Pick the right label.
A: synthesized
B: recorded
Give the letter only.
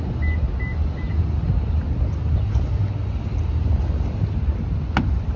B